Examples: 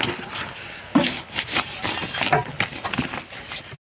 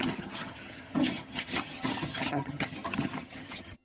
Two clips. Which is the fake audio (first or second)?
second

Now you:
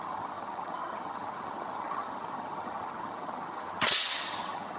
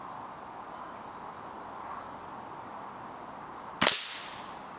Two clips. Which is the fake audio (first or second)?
first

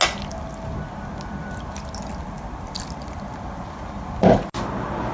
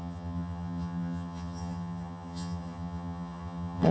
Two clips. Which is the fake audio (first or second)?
second